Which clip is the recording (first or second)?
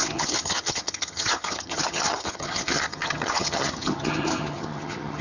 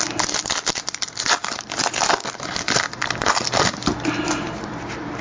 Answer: second